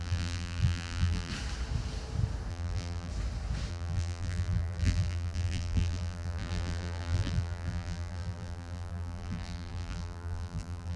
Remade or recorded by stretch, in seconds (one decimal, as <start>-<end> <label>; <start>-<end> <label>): 0.0-1.3 remade; 1.3-2.5 recorded; 2.5-3.1 remade; 3.1-3.7 recorded; 3.7-11.0 remade